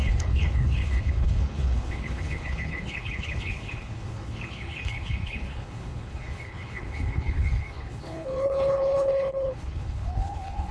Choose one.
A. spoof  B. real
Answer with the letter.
A